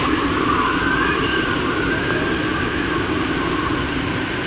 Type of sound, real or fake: real